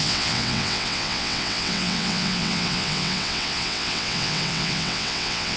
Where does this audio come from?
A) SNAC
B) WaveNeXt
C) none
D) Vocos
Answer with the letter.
B